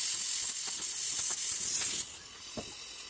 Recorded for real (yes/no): yes